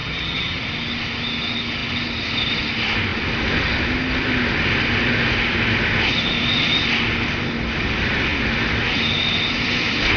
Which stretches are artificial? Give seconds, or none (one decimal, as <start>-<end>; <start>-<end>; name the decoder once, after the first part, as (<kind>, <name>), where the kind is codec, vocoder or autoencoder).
0.0-0.6 (vocoder, HiFi-GAN)